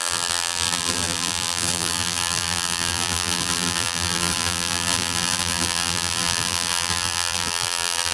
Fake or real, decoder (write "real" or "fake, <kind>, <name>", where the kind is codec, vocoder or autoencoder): fake, vocoder, BigVGAN v2